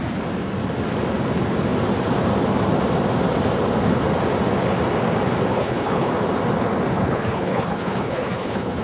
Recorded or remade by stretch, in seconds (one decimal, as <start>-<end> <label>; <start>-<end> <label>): 0.0-5.5 recorded; 5.5-6.1 remade; 6.1-6.9 recorded; 6.9-8.8 remade